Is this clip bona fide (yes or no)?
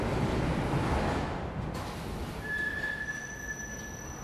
yes